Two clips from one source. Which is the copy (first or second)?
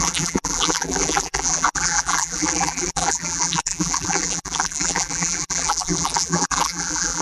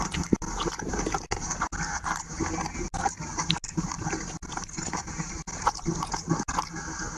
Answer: first